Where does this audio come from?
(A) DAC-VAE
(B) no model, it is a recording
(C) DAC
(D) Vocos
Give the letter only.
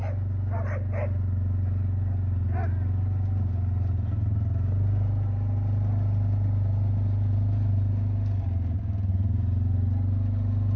B